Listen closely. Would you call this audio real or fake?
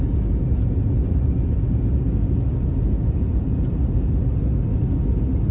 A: real